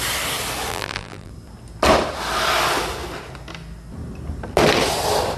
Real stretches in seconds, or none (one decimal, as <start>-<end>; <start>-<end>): 0.0-0.7; 1.3-5.4